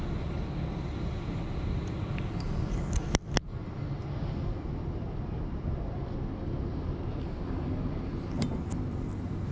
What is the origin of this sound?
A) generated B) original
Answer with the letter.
B